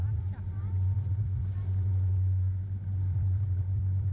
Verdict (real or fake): real